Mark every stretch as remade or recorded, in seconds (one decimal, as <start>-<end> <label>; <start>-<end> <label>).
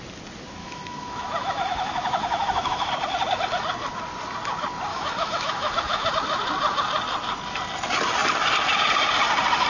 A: 0.0-0.6 recorded; 0.6-2.9 remade; 2.9-4.9 recorded; 4.9-6.1 remade; 6.1-9.7 recorded